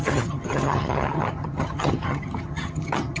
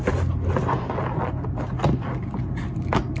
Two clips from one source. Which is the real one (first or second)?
second